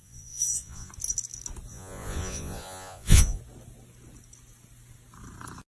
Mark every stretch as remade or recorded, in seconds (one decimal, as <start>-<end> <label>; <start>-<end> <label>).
0.0-0.9 remade; 0.9-1.7 recorded; 1.7-3.4 remade; 3.4-5.7 recorded